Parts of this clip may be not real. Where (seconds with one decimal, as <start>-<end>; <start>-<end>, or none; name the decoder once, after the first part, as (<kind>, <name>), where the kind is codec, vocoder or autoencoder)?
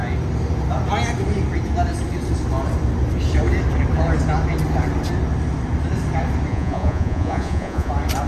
6.5-7.9 (vocoder, Vocos)